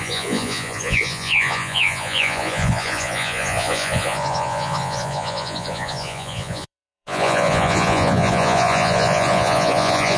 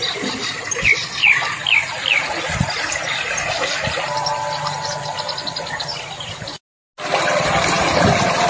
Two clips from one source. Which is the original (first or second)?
second